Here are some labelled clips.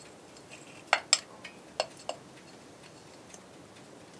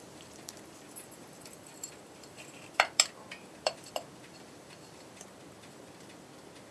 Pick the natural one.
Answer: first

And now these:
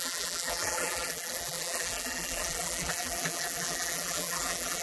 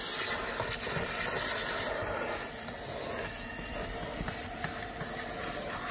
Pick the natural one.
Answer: second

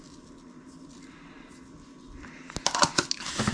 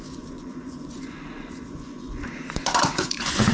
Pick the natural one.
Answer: first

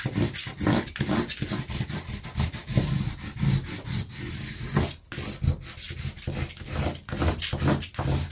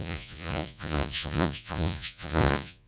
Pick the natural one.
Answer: first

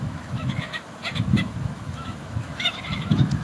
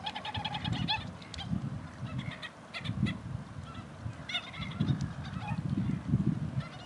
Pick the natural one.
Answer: second